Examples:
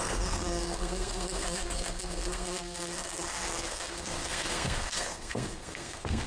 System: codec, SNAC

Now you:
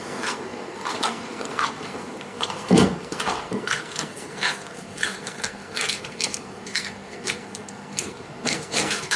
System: codec, SNAC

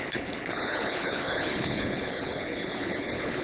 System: codec, HILCodec